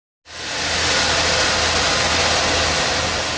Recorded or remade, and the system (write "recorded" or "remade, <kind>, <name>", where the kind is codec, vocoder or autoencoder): recorded